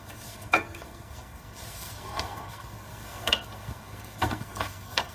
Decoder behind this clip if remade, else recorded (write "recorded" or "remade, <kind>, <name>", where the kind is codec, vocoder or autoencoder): remade, codec, SNAC